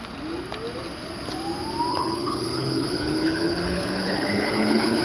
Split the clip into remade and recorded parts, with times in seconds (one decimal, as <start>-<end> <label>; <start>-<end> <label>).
0.0-1.9 recorded; 1.9-5.0 remade